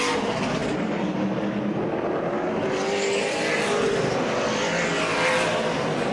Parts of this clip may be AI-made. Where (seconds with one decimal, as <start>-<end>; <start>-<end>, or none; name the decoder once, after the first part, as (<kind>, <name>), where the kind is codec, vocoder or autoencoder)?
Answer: none